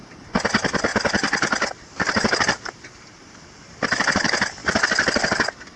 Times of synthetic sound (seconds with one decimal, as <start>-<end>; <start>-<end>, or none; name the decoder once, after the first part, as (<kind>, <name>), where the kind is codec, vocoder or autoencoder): 0.0-0.9 (vocoder, BigVGAN v2); 1.9-4.6